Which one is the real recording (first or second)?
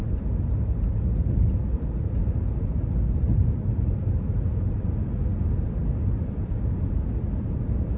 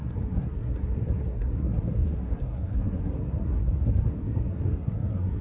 first